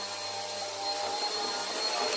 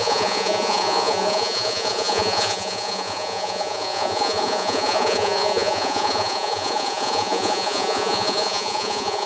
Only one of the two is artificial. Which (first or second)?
second